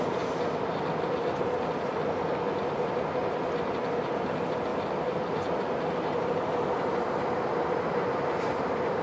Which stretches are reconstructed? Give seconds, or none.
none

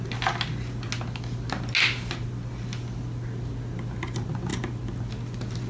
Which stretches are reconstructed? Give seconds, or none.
none